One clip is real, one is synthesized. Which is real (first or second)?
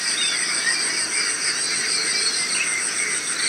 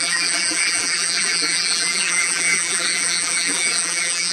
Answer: first